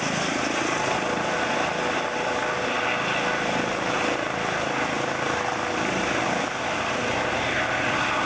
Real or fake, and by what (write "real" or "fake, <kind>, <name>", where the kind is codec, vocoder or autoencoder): real